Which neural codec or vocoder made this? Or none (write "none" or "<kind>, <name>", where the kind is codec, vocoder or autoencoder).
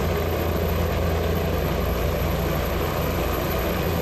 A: none